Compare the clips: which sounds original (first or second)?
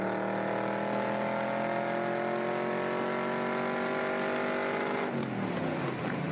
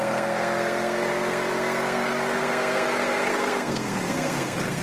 first